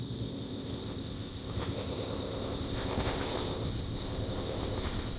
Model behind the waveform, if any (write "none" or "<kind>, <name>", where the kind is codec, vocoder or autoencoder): codec, ZipCodec